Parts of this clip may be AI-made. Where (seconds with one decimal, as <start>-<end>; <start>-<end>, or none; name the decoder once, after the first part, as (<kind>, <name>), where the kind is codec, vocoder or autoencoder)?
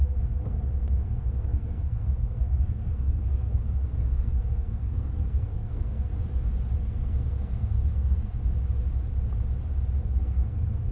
0.0-6.1 (codec, SNAC); 6.8-8.4; 10.0-10.9